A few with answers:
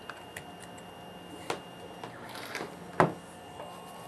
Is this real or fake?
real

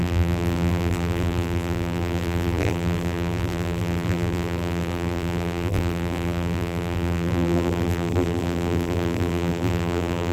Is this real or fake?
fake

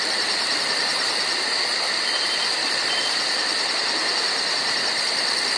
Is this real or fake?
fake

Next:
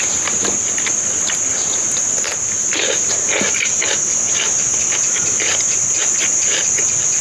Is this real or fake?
real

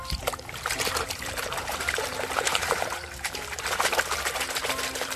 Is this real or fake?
fake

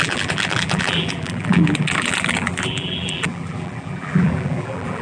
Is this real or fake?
fake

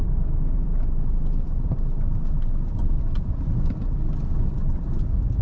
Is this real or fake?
fake